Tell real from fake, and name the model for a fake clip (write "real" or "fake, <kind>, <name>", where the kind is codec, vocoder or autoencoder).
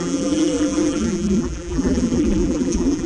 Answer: fake, vocoder, BigVGAN v2